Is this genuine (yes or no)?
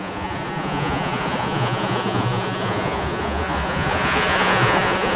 no